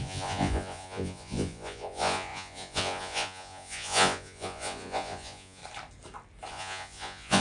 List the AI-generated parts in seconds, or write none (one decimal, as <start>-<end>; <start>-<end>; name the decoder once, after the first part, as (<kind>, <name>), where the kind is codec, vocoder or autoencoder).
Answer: 0.0-5.6 (vocoder, Vocos); 6.5-7.4